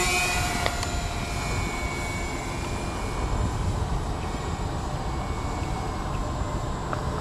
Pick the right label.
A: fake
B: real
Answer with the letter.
B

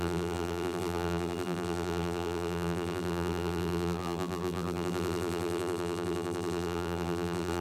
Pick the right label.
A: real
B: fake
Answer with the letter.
B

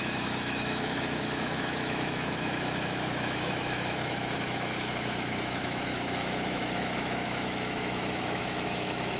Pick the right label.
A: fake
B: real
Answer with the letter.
A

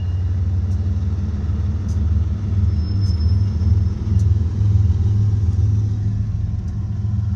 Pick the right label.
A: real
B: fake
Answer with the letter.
A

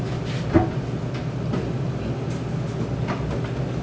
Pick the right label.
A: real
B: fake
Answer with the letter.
A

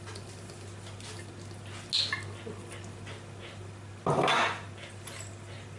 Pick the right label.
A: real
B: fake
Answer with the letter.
A